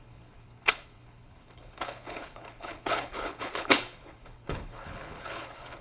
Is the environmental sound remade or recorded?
remade